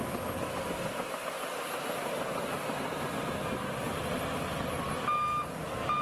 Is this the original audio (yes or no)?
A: yes